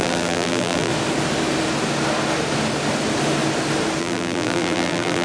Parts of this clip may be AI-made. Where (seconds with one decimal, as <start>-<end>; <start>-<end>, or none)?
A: 0.0-0.9; 4.0-5.2